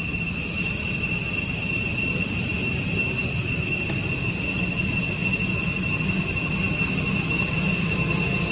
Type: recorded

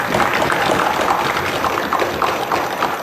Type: recorded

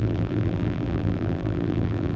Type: remade